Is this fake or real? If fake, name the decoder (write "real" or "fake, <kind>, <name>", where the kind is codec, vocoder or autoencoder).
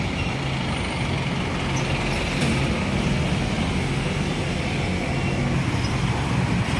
real